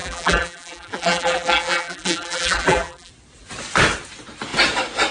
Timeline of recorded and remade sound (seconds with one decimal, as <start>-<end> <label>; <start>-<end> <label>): 0.0-3.1 remade; 3.1-5.1 recorded